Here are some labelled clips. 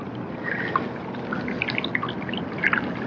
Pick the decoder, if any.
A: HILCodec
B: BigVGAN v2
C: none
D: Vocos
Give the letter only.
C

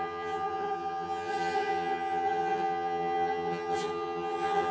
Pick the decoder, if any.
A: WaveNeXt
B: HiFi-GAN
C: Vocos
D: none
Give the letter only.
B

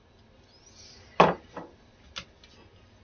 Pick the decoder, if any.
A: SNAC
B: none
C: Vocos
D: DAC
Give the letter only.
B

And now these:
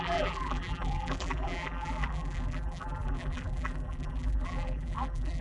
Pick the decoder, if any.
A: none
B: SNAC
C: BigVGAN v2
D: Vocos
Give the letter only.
C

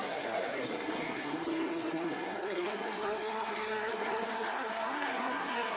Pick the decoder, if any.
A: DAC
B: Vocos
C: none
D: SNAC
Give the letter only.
D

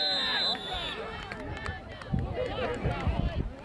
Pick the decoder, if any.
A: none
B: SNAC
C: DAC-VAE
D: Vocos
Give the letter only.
A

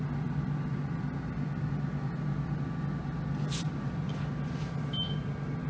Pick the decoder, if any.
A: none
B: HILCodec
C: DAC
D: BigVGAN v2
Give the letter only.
A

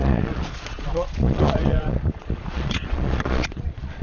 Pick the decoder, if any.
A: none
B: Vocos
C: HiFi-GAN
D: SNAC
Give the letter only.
B